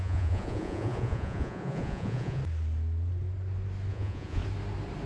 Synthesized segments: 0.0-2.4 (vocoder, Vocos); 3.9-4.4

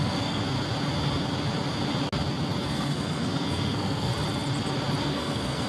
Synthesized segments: 0.0-0.4 (codec, SNAC); 2.6-4.1; 5.0-5.7